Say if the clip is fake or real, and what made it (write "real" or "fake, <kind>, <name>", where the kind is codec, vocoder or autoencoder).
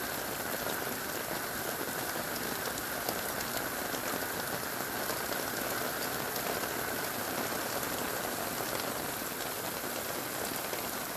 real